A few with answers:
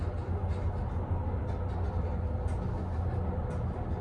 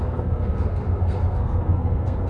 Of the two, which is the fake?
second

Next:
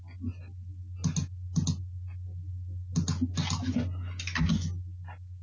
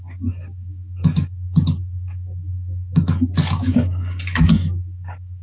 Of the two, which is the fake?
second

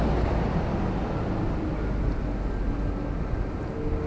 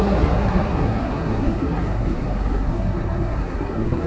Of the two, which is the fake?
second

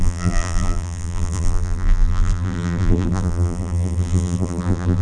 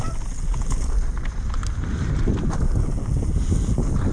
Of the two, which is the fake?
first